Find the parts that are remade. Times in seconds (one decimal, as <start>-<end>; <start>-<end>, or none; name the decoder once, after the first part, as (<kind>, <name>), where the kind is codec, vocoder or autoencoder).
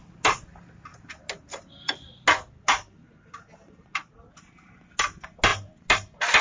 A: none